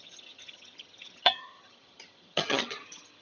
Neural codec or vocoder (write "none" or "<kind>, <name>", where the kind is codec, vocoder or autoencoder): vocoder, HiFi-GAN